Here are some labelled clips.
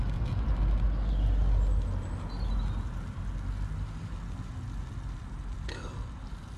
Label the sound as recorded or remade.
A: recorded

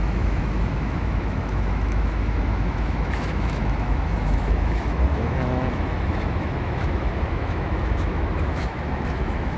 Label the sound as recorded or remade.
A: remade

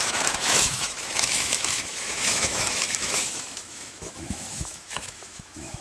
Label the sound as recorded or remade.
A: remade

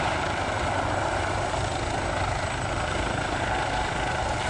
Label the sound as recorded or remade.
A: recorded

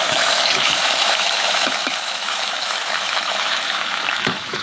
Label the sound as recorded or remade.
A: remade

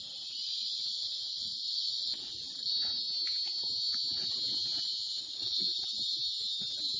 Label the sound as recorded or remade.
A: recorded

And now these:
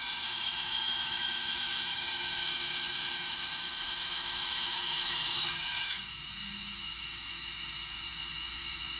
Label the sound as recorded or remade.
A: remade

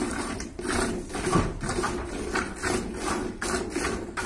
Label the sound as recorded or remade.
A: recorded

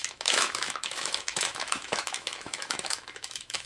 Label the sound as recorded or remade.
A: remade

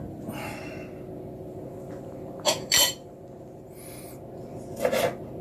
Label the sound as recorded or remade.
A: recorded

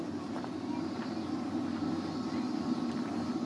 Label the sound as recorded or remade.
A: recorded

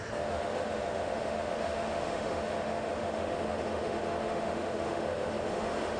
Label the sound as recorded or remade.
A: remade